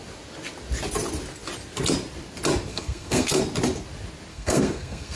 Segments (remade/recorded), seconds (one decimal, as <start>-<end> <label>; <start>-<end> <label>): 0.0-2.7 recorded; 2.7-3.4 remade; 3.4-4.3 recorded; 4.3-5.2 remade